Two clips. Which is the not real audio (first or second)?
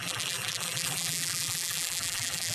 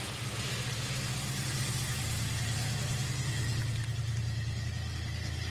first